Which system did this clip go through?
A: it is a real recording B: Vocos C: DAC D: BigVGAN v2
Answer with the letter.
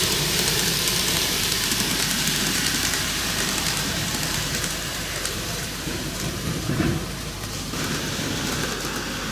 D